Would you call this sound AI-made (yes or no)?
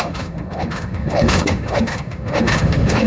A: yes